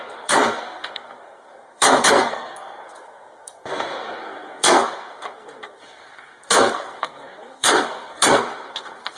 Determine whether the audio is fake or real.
fake